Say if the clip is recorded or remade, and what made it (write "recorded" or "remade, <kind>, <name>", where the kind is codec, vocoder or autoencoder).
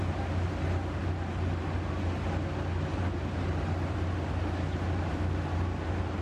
recorded